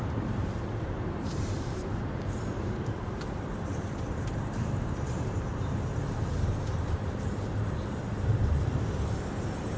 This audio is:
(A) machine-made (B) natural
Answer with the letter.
A